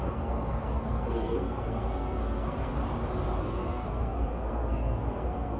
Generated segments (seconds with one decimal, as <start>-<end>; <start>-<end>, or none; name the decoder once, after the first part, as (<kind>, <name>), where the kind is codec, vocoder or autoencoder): 0.0-2.8 (codec, SNAC); 3.4-5.6